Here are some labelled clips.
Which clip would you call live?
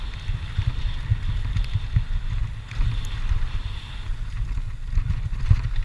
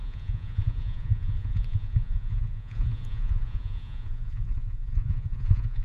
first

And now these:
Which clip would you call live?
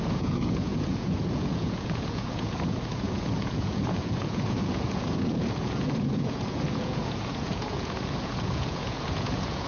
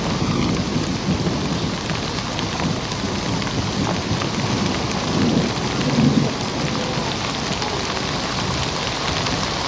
second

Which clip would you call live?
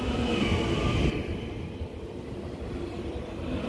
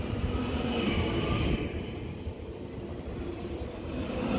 first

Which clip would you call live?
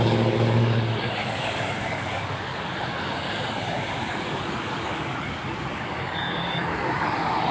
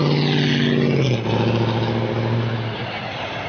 second